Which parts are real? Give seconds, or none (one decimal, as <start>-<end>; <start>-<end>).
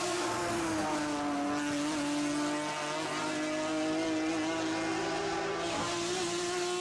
0.0-6.8